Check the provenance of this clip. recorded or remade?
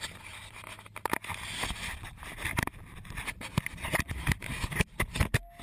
recorded